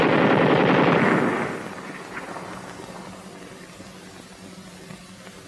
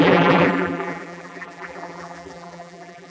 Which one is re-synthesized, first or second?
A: second